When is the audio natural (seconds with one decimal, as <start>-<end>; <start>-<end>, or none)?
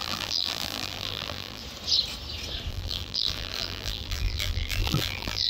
1.6-2.7